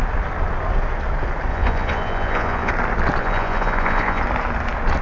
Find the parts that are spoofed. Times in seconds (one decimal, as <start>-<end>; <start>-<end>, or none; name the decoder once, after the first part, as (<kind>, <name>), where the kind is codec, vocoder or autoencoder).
1.5-2.7 (vocoder, Vocos); 3.2-4.2